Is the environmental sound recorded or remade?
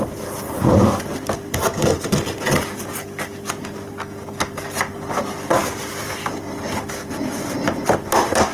recorded